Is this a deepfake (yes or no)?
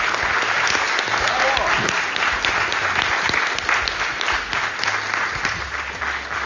no